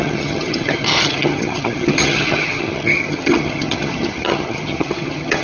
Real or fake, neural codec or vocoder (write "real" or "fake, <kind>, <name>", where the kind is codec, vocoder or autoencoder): fake, vocoder, HiFi-GAN